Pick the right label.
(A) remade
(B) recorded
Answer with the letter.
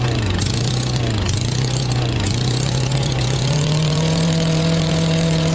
A